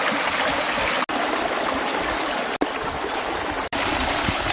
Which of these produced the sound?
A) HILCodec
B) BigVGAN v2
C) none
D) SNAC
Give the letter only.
C